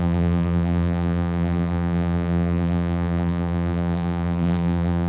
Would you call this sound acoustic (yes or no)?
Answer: no